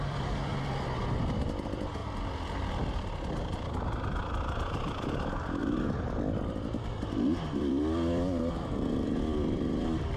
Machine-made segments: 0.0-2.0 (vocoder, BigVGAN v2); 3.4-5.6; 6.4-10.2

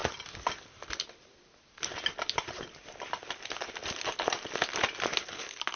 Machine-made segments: none